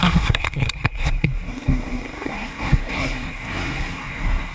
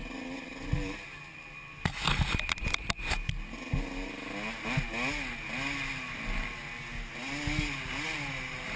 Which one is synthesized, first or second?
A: first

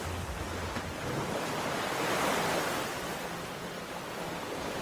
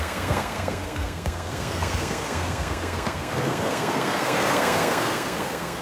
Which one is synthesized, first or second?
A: second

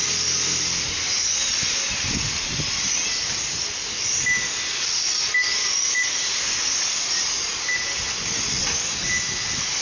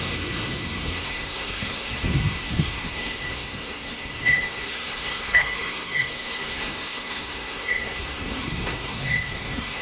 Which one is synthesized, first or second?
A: second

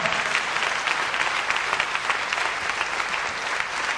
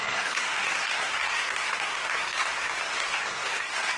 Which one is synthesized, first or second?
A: second